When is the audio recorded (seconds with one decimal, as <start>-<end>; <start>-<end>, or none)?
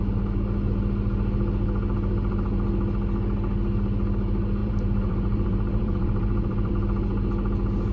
0.0-4.6; 6.7-7.9